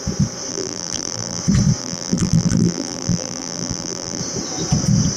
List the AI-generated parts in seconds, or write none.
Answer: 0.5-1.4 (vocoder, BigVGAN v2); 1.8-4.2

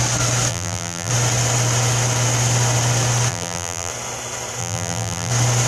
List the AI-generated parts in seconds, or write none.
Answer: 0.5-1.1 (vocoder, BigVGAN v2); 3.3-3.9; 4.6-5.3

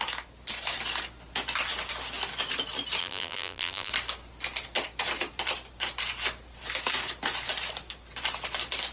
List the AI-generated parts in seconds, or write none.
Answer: 3.0-3.9 (vocoder, BigVGAN v2)

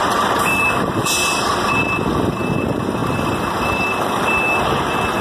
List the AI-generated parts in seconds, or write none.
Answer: 0.0-1.8 (vocoder, BigVGAN v2); 3.0-4.6

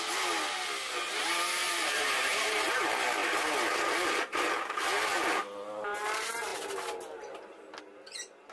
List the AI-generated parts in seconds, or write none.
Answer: 1.6-2.7 (vocoder, BigVGAN v2)

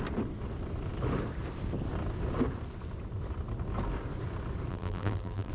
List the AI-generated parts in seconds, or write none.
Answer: 4.7-5.5 (vocoder, BigVGAN v2)